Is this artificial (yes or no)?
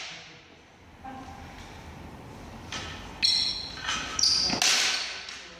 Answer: no